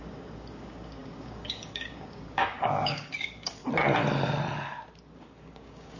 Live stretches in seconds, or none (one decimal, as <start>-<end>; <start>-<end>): 3.6-5.1